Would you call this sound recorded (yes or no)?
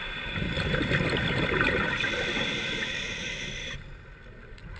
yes